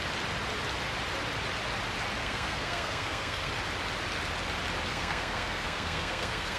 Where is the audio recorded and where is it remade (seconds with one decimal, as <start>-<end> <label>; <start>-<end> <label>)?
0.0-2.2 recorded; 2.2-3.5 remade; 3.5-4.9 recorded; 4.9-6.6 remade